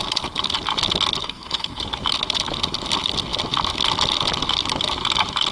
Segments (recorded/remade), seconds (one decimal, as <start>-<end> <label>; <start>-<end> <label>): 0.0-1.2 recorded; 1.2-1.8 remade; 1.8-5.5 recorded